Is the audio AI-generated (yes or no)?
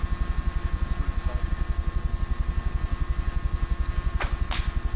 no